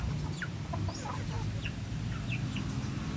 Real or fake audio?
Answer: real